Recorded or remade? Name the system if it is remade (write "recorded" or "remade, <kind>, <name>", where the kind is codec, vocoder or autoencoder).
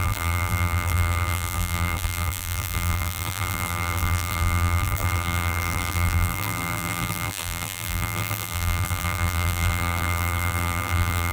remade, vocoder, BigVGAN v2